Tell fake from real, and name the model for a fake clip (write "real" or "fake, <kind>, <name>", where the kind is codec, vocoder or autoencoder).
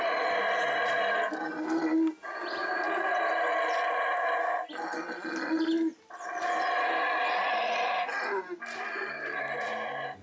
real